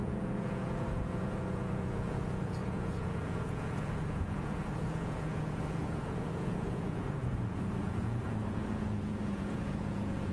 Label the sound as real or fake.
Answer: fake